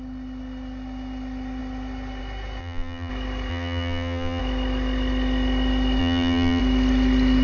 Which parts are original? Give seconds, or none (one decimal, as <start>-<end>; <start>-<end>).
0.0-2.6; 3.1-3.5; 4.4-6.0; 6.6-7.4